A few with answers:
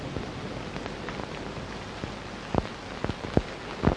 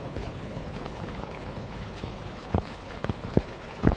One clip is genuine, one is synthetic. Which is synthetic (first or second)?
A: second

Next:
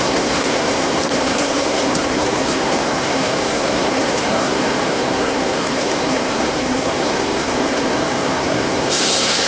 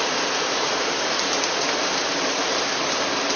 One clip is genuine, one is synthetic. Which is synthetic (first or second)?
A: first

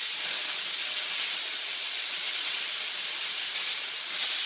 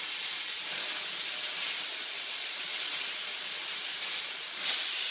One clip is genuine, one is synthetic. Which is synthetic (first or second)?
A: first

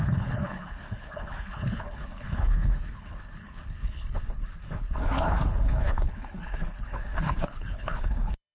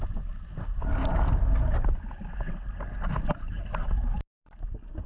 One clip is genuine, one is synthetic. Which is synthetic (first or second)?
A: first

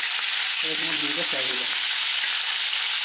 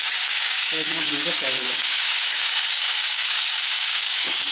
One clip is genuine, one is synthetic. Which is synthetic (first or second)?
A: second